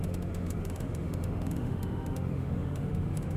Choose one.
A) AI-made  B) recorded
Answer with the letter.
A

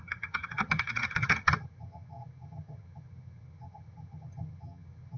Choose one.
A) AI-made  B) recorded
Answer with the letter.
A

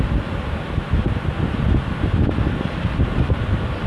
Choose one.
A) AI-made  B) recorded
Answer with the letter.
B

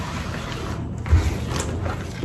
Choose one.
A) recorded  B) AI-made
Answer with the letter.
A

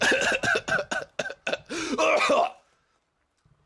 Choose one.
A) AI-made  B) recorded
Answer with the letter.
B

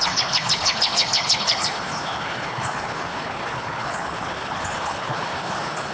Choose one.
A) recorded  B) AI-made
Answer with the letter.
B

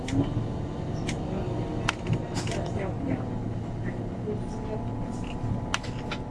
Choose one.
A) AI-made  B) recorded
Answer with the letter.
B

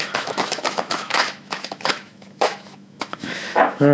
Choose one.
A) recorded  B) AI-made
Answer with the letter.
B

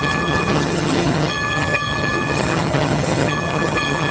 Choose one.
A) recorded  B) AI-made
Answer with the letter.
B